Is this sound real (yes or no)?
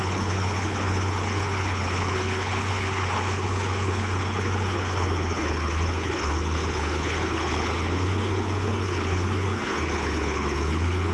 no